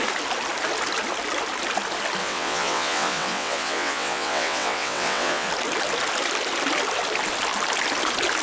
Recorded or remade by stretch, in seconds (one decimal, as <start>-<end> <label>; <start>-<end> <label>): 0.0-2.2 recorded; 2.2-5.5 remade; 5.5-8.4 recorded